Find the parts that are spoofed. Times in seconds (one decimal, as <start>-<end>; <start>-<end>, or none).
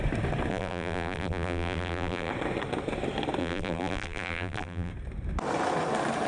0.5-2.3; 3.4-4.9